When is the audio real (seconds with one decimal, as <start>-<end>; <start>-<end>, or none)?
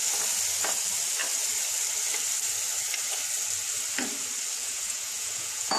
0.0-4.6